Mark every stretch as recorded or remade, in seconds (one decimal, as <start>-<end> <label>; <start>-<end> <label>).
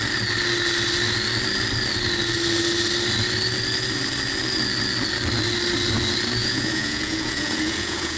0.0-6.4 recorded; 6.4-8.2 remade